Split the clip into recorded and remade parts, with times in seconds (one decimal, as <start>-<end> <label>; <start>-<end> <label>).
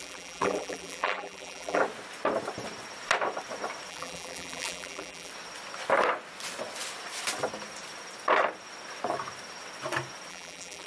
0.0-1.8 remade; 1.8-3.9 recorded; 3.9-5.3 remade; 5.3-10.3 recorded; 10.3-10.9 remade